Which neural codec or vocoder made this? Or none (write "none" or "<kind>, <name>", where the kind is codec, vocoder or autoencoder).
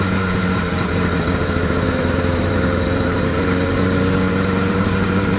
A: vocoder, BigVGAN v2